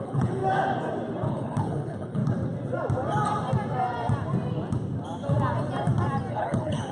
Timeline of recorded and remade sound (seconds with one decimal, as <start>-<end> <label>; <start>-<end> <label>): 0.0-0.4 remade; 0.4-1.3 recorded; 1.3-2.2 remade; 2.2-6.3 recorded; 6.3-6.9 remade